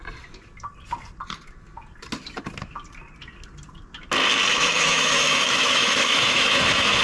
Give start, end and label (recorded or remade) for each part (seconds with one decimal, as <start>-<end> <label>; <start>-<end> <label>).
0.0-4.5 recorded; 4.5-7.0 remade